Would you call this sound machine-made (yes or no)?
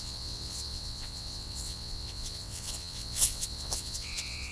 yes